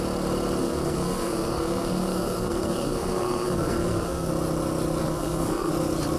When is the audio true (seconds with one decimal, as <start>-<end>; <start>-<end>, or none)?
0.0-0.6; 4.3-5.0; 5.7-6.2

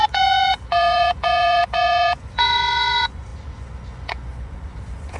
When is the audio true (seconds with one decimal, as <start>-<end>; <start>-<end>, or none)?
none

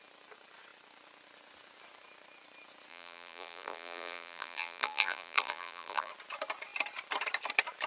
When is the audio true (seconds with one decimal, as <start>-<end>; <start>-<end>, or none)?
0.0-2.9; 6.1-7.9

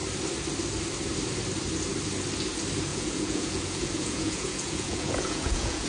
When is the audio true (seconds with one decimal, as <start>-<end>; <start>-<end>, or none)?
0.0-2.9

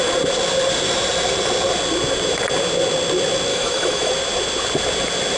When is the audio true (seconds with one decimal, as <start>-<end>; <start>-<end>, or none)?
0.0-3.5; 4.1-5.4

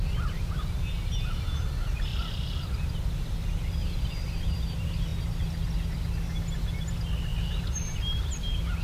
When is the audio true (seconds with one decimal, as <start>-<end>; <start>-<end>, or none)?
0.0-2.1; 2.7-3.8; 4.6-7.3; 8.2-8.8

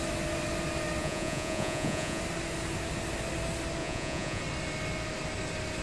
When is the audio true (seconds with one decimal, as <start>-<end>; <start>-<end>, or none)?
0.0-1.0; 2.2-3.8; 4.4-5.8

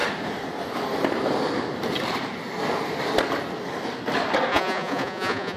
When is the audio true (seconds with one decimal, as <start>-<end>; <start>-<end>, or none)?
0.0-4.5